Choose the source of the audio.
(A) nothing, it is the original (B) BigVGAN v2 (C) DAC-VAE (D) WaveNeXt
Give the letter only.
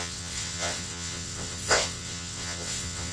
D